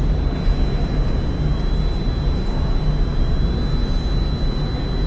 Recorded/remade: recorded